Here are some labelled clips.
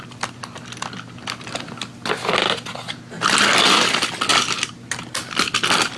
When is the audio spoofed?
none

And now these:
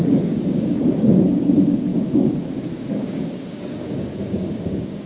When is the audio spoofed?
0.0-5.1 (codec, DAC)

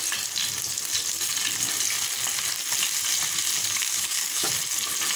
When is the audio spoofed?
3.6-4.5 (codec, DAC)

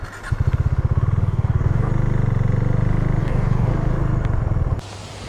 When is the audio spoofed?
1.2-1.9 (codec, DAC); 3.2-3.7

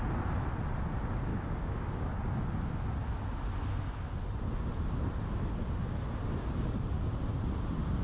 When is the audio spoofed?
1.3-2.1 (codec, DAC)